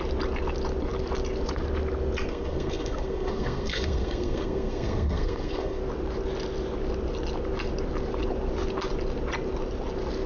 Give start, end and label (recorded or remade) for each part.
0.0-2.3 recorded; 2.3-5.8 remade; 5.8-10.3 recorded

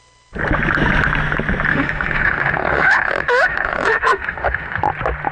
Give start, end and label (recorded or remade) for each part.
0.0-1.7 recorded; 1.7-4.8 remade; 4.8-5.3 recorded

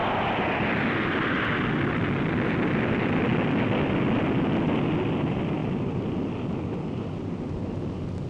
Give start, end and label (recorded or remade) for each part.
0.0-8.3 recorded

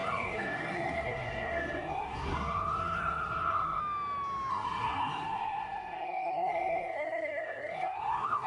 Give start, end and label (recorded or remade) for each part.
0.0-3.8 remade; 3.8-4.5 recorded; 4.5-8.5 remade

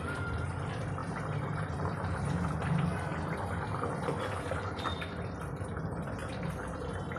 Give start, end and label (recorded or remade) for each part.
0.0-7.2 remade

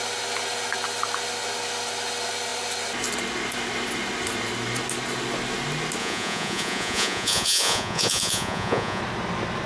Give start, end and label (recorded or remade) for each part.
0.0-6.0 recorded; 6.0-9.0 remade; 9.0-9.7 recorded

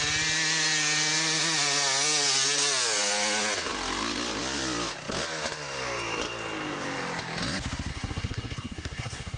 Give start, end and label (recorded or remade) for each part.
0.0-7.9 recorded; 7.9-9.4 remade

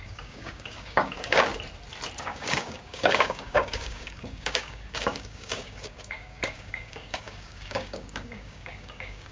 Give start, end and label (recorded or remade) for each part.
0.0-1.5 remade; 1.5-2.2 recorded; 2.2-9.3 remade